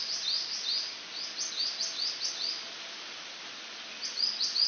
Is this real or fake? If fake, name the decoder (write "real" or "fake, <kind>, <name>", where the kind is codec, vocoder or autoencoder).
real